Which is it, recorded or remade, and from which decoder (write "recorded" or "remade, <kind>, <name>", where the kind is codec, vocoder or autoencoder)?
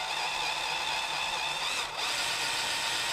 recorded